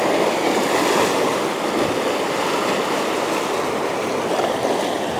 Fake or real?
real